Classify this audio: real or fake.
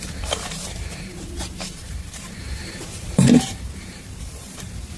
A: fake